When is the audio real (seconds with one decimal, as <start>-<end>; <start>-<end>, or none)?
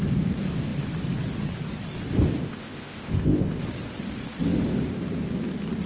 0.0-2.4; 3.6-5.9